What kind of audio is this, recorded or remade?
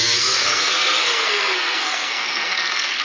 remade